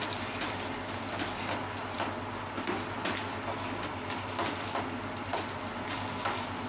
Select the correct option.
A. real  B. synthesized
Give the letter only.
A